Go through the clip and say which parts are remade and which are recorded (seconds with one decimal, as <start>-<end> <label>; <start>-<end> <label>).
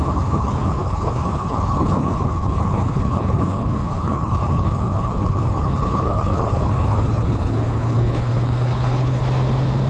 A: 0.0-9.2 remade; 9.2-9.9 recorded